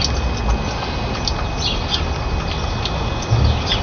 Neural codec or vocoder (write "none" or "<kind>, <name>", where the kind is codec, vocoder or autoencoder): none